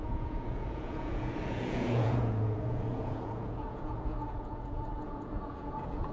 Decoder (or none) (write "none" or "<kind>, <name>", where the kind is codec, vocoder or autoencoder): vocoder, Vocos